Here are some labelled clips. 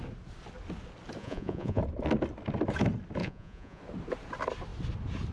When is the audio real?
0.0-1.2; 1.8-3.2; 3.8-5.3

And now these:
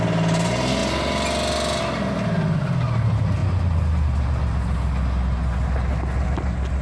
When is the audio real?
0.0-6.8

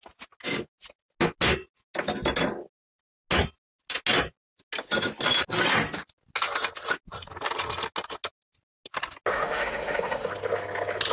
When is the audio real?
0.0-9.3; 10.3-11.1

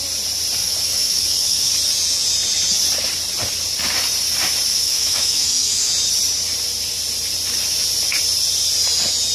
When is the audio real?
0.0-0.6; 1.7-4.7; 5.9-9.3